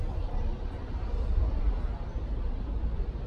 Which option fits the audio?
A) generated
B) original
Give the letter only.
B